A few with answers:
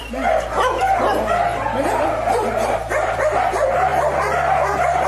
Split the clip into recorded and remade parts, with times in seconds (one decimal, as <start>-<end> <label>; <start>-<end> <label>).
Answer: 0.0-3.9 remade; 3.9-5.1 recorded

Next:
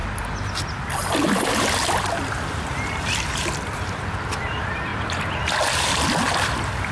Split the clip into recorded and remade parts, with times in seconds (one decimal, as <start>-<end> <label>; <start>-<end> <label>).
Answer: 0.0-2.5 recorded; 2.5-4.9 remade; 4.9-6.2 recorded; 6.2-6.9 remade

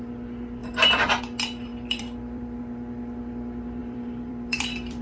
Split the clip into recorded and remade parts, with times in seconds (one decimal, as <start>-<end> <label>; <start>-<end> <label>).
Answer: 0.0-0.6 recorded; 0.6-1.2 remade; 1.2-1.7 recorded; 1.7-2.6 remade; 2.6-3.8 recorded; 3.8-5.0 remade

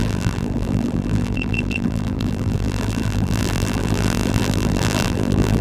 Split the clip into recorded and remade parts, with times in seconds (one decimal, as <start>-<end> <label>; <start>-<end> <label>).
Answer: 0.0-5.6 remade

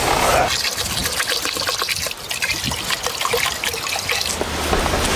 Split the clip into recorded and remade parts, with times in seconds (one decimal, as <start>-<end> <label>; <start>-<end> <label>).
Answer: 0.0-5.2 recorded